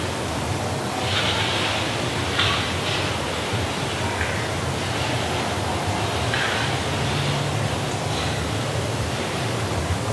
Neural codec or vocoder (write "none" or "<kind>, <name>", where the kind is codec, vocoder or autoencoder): none